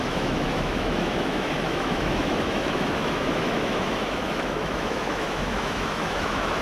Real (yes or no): no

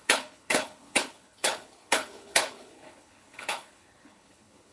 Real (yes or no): no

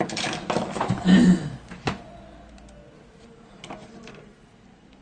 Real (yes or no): yes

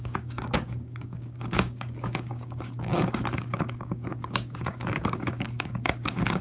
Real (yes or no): no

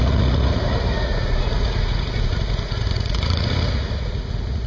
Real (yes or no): no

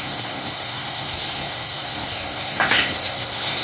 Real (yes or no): no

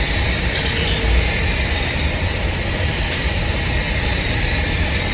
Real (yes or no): yes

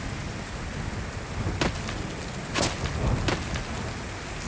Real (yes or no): yes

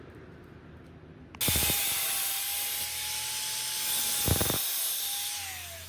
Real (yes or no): yes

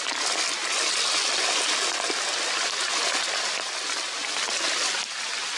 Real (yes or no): yes